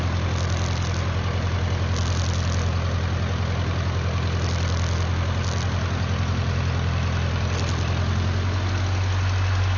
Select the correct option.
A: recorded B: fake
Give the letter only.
A